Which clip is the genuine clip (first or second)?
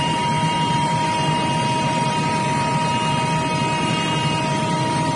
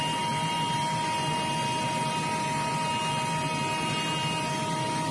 second